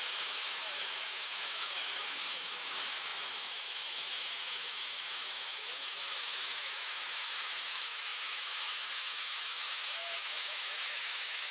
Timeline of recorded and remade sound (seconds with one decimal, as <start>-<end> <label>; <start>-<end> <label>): 0.0-11.5 remade